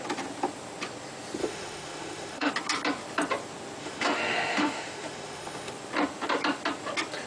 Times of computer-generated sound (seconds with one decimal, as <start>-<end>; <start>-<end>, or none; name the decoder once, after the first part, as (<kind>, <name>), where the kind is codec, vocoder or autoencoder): 1.4-2.5 (autoencoder, DAC-VAE); 3.8-5.7

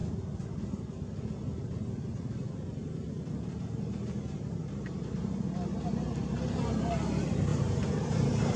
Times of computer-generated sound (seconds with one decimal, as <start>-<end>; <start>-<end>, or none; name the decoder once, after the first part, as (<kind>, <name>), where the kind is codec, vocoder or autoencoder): 7.5-8.6 (vocoder, BigVGAN v2)